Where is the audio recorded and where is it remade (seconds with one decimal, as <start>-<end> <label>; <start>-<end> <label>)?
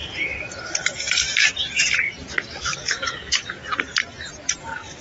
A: 0.0-0.6 recorded; 0.6-1.2 remade; 1.2-2.3 recorded; 2.3-3.6 remade; 3.6-4.6 recorded; 4.6-5.0 remade